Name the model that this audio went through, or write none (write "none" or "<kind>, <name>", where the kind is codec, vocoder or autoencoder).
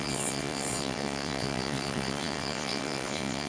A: vocoder, WaveNeXt